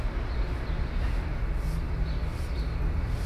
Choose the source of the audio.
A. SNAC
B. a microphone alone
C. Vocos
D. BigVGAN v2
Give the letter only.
B